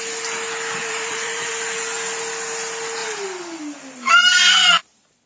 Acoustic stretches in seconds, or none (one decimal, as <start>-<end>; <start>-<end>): 0.0-0.8; 1.5-3.0; 3.6-5.3